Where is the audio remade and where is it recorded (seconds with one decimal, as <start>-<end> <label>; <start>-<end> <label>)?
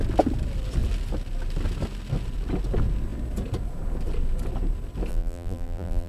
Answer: 0.0-5.1 recorded; 5.1-6.1 remade